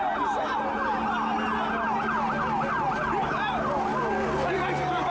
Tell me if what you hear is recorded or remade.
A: recorded